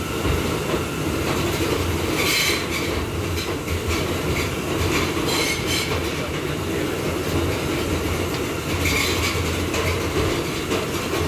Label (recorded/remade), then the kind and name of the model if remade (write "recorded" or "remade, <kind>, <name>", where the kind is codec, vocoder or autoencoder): recorded